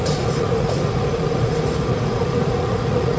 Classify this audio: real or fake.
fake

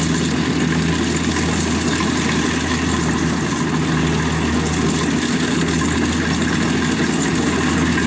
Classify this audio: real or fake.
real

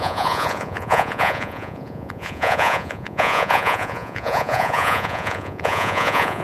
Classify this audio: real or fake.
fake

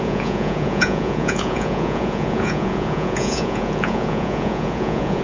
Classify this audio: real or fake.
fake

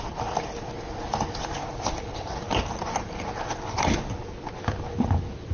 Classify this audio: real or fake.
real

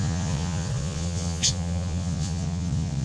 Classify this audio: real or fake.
fake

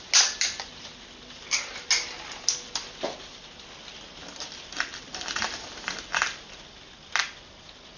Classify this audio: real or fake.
real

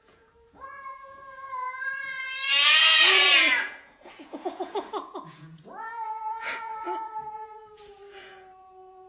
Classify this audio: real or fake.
fake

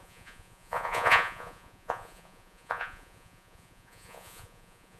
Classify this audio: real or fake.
fake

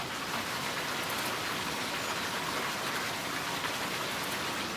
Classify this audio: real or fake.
real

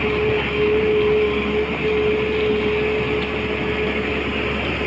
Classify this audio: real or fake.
real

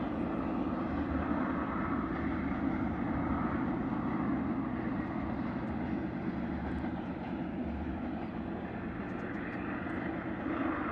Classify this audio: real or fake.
real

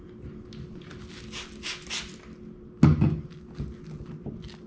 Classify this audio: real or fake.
real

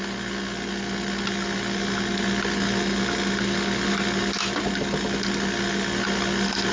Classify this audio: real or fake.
real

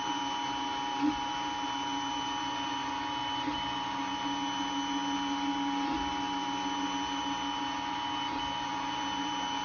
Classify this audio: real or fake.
real